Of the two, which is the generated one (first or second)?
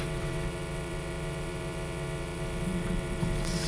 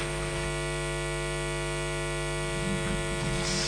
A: first